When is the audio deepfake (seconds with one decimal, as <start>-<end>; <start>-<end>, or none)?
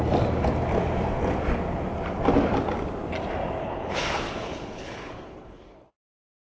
3.6-5.9